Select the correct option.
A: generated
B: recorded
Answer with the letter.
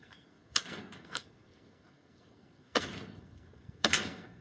A